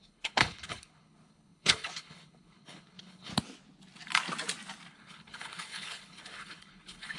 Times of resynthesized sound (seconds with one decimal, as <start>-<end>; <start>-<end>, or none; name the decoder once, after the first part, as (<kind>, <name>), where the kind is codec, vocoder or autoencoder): 0.0-3.3 (codec, HILCodec); 4.9-7.2